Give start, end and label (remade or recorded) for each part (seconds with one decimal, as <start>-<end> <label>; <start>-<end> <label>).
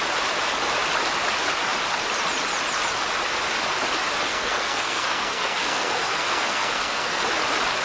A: 0.0-4.3 recorded; 4.3-7.2 remade; 7.2-7.8 recorded